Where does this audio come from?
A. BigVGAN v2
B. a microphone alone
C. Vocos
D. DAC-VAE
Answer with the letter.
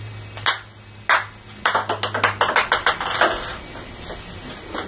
B